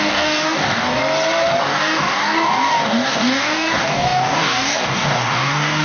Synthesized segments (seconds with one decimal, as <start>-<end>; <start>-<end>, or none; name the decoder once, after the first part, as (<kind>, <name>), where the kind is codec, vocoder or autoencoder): 0.0-1.0 (codec, DAC); 1.6-5.8